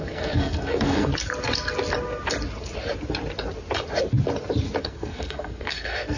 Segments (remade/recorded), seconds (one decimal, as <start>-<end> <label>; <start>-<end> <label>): 0.0-1.1 remade; 1.1-4.8 recorded; 4.8-6.2 remade